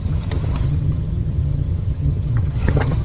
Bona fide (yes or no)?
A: no